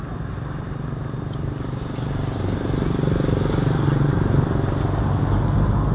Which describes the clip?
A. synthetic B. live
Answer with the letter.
B